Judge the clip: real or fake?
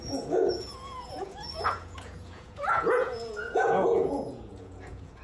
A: fake